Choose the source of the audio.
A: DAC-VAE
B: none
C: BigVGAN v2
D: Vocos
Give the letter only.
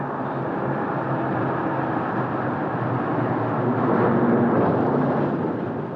B